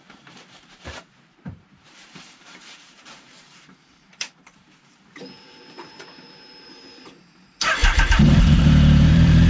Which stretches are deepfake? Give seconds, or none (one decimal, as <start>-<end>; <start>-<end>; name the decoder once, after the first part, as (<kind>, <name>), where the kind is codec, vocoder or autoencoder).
0.0-9.5 (vocoder, BigVGAN v2)